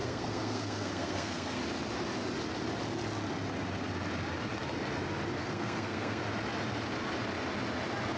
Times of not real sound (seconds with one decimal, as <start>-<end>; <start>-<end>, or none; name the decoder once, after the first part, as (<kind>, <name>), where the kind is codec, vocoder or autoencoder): 0.0-1.6 (codec, SNAC); 5.4-6.2